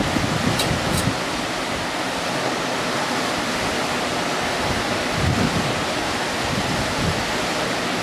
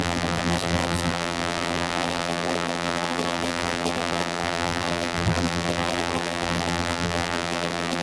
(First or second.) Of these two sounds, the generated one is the second